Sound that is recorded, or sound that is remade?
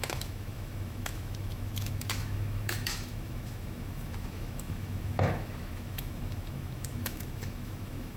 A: remade